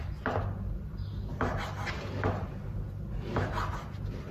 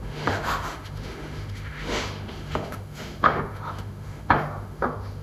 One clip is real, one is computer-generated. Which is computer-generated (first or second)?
second